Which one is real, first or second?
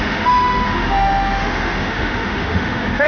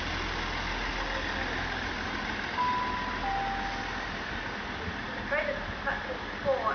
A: second